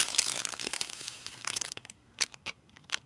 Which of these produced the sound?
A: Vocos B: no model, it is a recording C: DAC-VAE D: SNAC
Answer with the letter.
D